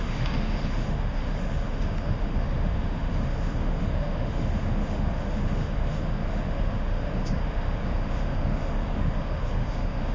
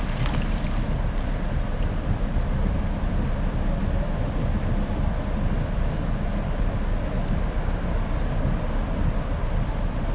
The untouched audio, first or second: second